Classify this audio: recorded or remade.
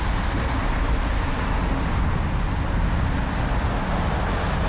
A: recorded